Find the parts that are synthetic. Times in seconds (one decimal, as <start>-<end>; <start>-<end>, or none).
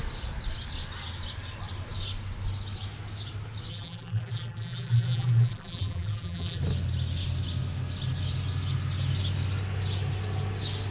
3.7-6.6